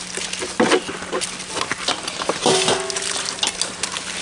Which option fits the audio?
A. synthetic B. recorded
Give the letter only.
B